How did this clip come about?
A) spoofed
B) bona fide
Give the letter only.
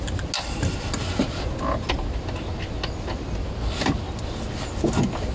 B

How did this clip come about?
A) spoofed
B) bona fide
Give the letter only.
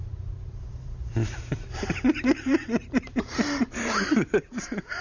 A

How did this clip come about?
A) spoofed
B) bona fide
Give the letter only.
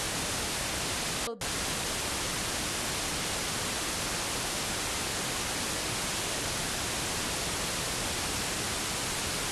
B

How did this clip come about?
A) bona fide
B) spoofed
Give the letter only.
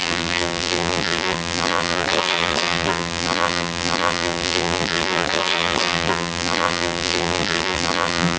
B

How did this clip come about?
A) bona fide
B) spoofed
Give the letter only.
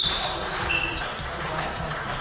A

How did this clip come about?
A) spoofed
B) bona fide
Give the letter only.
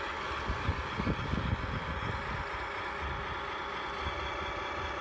B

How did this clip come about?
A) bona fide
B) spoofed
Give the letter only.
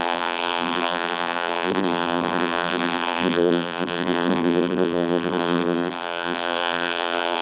B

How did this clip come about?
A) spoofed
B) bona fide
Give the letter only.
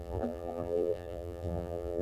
A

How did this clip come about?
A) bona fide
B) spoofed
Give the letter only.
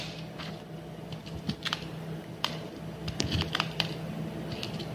B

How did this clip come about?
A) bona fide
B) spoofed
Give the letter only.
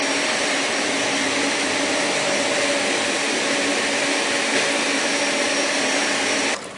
A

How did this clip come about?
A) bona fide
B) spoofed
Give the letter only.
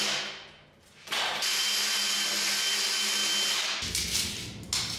A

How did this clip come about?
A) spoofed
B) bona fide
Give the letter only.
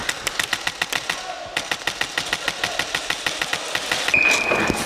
B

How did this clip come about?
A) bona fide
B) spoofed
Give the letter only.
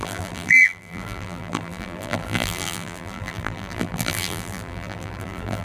B